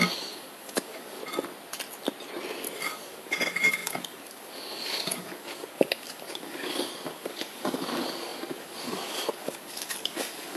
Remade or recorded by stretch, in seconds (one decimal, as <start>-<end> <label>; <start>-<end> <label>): 0.0-1.2 remade; 1.2-2.8 recorded; 2.8-10.6 remade